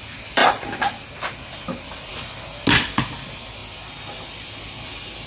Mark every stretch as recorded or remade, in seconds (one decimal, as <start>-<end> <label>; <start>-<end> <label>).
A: 0.0-0.4 remade; 0.4-1.6 recorded; 1.6-2.1 remade; 2.1-2.8 recorded; 2.8-3.6 remade; 3.6-4.6 recorded; 4.6-5.3 remade